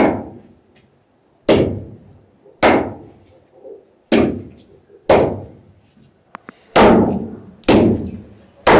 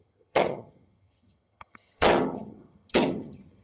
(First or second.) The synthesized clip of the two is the second